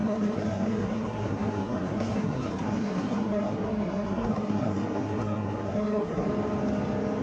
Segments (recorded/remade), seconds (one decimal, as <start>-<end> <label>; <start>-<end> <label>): 0.0-6.3 remade; 6.3-7.2 recorded